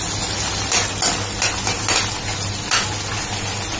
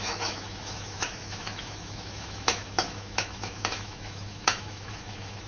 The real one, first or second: first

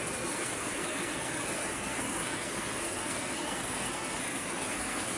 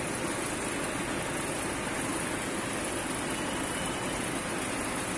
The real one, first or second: second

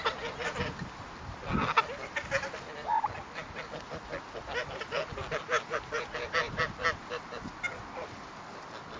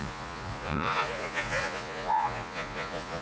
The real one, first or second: first